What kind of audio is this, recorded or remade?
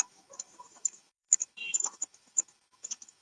remade